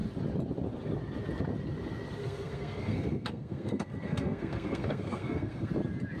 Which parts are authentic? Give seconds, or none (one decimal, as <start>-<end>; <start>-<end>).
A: 0.0-2.2; 5.7-6.2